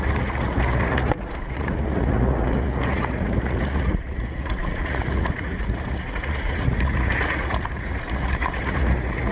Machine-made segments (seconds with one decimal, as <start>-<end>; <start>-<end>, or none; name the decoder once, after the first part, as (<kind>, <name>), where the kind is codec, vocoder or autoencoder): 0.0-9.3 (vocoder, Vocos)

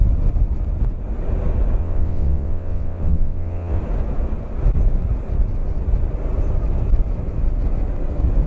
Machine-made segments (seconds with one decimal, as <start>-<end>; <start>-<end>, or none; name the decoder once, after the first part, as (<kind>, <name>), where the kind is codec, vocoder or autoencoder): 1.8-3.8 (vocoder, WaveNeXt)